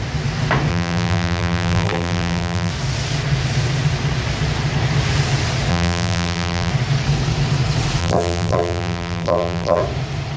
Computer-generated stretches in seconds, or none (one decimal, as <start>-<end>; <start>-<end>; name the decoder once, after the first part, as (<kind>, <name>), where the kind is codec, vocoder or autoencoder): 0.7-2.7 (vocoder, BigVGAN v2); 5.7-6.7; 8.0-9.8